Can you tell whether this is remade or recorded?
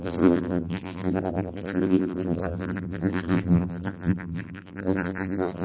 remade